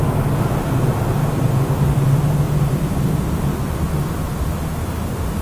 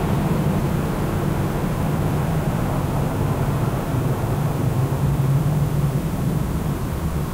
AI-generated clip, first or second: second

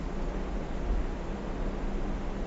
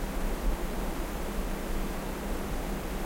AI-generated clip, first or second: second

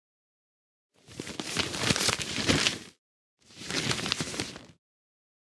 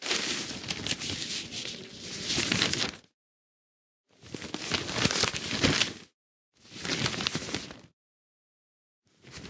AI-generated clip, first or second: first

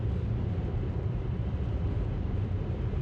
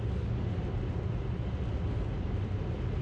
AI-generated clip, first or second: first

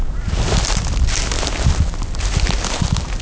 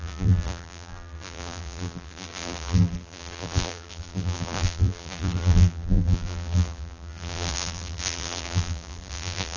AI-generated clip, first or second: second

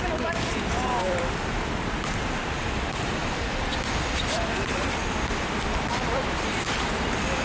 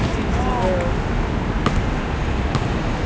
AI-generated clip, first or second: first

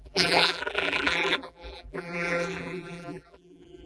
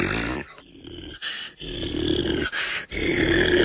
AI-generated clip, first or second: first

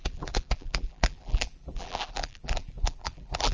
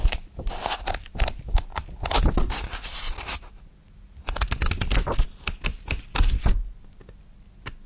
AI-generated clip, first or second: first